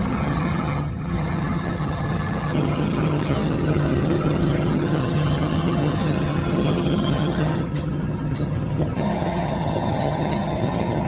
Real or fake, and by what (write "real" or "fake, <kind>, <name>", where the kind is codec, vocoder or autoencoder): fake, vocoder, HiFi-GAN